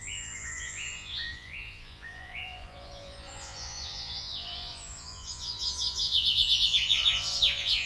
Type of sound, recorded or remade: remade